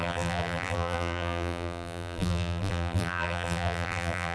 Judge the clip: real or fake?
fake